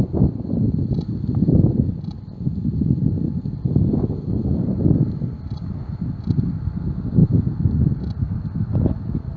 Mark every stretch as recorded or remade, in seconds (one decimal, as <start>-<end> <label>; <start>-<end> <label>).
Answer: 0.0-9.4 recorded